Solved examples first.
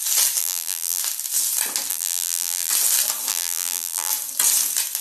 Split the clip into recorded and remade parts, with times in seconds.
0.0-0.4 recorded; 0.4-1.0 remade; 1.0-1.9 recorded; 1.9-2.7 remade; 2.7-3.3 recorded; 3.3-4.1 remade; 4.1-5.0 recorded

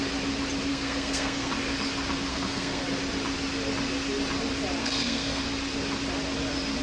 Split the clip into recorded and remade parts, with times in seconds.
0.0-0.7 recorded; 0.7-1.5 remade; 1.5-2.3 recorded; 2.3-2.8 remade; 2.8-4.8 recorded; 4.8-5.4 remade; 5.4-6.8 recorded

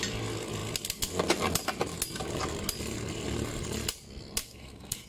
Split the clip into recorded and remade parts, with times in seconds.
0.0-4.4 recorded; 4.4-5.1 remade

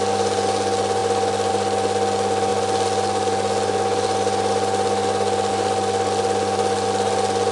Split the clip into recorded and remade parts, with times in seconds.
0.0-7.5 recorded

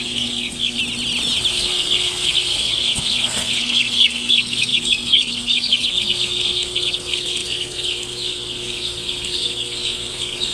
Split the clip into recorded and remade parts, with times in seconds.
0.0-0.8 remade; 0.8-1.5 recorded; 1.5-10.5 remade

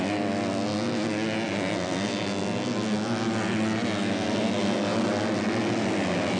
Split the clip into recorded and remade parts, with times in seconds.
0.0-6.4 recorded

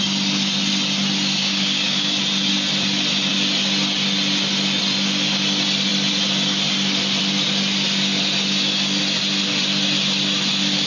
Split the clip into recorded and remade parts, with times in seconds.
0.0-1.4 recorded; 1.4-2.2 remade; 2.2-10.9 recorded

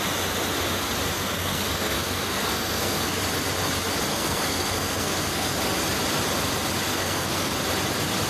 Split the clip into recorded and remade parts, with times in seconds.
0.0-1.1 recorded; 1.1-3.2 remade; 3.2-4.1 recorded; 4.1-5.5 remade; 5.5-6.9 recorded; 6.9-7.5 remade; 7.5-8.3 recorded